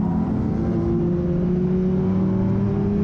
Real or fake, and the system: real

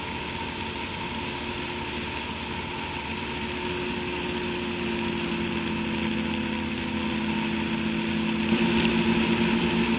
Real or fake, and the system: real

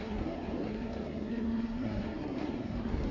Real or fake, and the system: fake, codec, SNAC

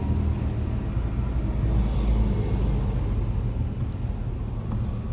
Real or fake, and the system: real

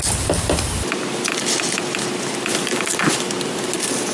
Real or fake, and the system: real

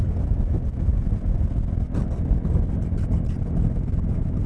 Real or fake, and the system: real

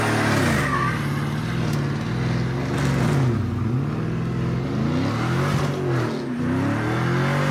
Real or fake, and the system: real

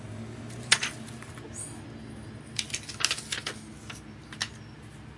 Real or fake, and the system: real